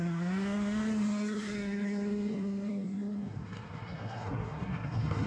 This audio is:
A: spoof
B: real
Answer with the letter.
A